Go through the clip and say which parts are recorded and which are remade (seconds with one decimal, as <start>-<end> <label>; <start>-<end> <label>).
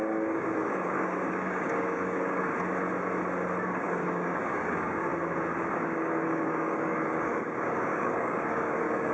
0.0-2.5 remade; 2.5-3.6 recorded; 3.6-5.1 remade; 5.1-5.7 recorded; 5.7-9.1 remade